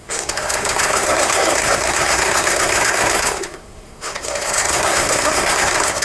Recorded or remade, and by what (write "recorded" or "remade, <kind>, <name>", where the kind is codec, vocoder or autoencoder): remade, codec, SNAC